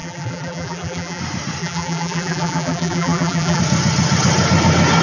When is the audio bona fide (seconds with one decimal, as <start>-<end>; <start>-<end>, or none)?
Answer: 1.2-1.6; 3.6-5.0